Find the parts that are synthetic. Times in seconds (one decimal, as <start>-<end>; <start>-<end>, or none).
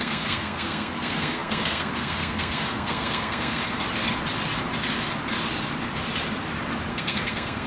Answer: 0.0-3.6; 6.9-7.7